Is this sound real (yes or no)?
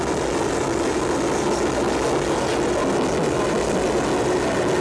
yes